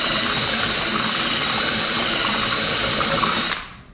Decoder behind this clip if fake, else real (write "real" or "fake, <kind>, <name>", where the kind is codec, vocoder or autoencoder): real